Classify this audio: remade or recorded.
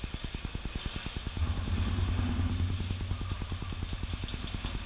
recorded